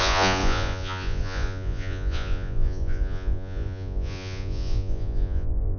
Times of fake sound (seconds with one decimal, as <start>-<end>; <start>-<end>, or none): 0.0-5.8